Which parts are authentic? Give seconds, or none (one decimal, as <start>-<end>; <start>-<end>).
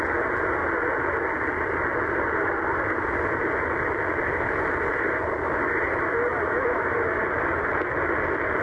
0.0-6.3; 7.2-8.6